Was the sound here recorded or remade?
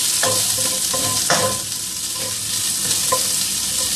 recorded